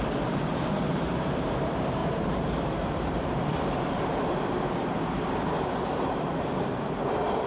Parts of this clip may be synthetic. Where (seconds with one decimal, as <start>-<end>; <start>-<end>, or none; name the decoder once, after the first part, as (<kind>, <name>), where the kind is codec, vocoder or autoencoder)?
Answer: 0.0-7.5 (vocoder, BigVGAN v2)